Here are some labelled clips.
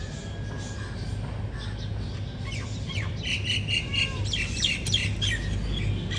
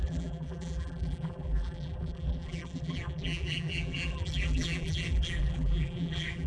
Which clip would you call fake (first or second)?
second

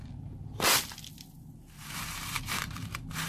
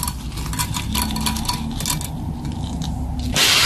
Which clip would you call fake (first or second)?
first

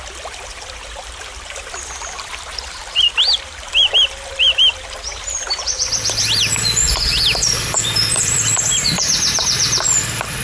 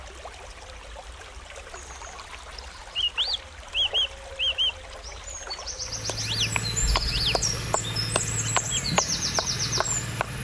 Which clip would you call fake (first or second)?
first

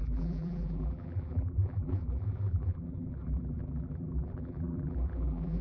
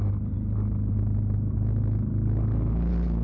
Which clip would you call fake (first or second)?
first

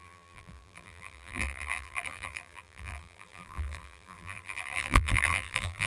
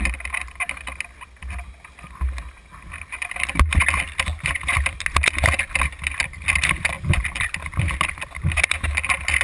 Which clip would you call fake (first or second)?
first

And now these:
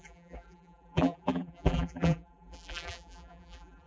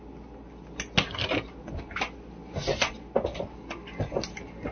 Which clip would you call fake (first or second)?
first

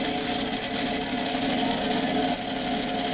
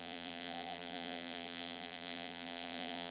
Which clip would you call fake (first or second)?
second